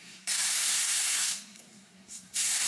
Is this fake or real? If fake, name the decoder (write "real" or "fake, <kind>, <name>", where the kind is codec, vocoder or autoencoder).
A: fake, codec, SNAC